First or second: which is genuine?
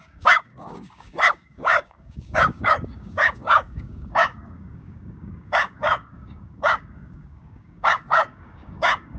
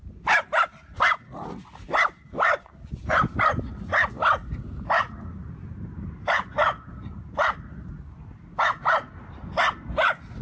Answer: second